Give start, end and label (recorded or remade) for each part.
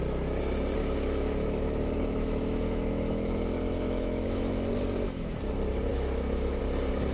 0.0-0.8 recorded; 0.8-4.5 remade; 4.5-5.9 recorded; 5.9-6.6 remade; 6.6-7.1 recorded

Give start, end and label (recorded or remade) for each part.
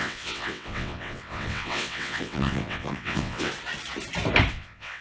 0.0-3.5 remade; 3.5-4.5 recorded; 4.5-5.0 remade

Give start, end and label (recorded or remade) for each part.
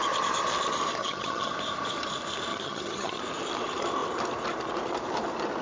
0.0-1.0 recorded; 1.0-1.5 remade; 1.5-2.5 recorded; 2.5-3.2 remade; 3.2-5.6 recorded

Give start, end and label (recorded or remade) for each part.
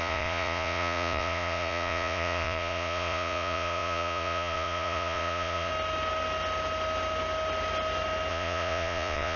0.0-5.7 remade; 5.7-8.3 recorded; 8.3-9.4 remade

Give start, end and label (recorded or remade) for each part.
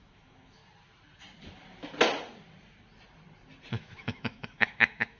0.0-0.6 remade; 0.6-3.7 recorded; 3.7-5.2 remade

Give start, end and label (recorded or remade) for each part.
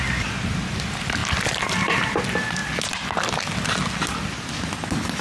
0.0-5.2 recorded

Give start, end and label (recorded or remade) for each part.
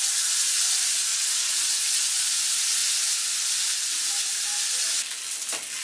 0.0-1.1 recorded; 1.1-2.3 remade; 2.3-5.8 recorded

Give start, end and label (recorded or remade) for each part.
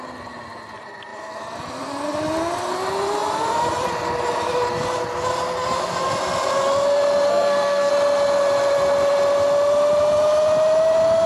0.0-7.3 recorded; 7.3-7.9 remade; 7.9-11.3 recorded